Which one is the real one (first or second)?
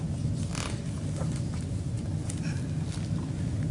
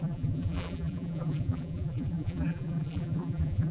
first